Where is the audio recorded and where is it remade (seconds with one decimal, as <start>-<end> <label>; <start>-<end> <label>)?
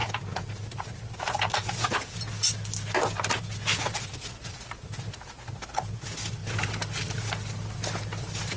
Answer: 0.0-0.5 remade; 0.5-1.6 recorded; 1.6-2.3 remade; 2.3-8.6 recorded